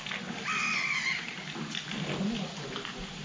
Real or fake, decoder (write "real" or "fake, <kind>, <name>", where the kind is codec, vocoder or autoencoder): real